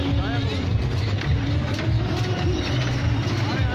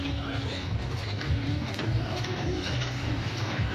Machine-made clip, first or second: second